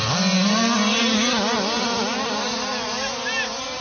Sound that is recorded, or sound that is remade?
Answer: recorded